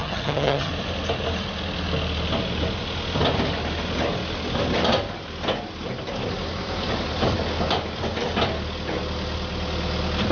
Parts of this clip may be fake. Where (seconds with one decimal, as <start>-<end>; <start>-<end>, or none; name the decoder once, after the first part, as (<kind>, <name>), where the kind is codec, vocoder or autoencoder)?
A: 0.0-0.7 (vocoder, HiFi-GAN)